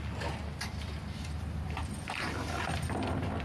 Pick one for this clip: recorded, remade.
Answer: recorded